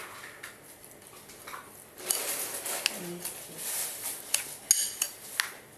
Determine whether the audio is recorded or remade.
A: recorded